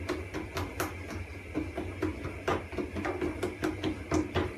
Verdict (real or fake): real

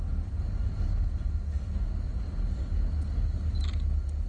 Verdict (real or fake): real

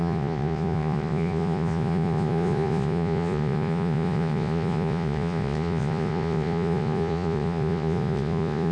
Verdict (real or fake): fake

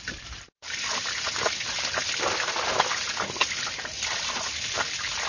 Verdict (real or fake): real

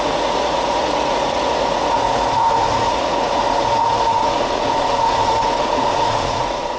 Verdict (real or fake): fake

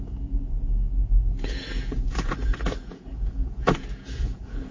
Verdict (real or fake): fake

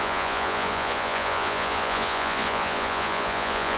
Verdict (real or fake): fake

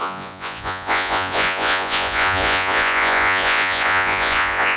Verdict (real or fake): fake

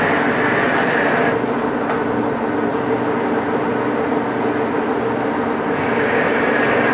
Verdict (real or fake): real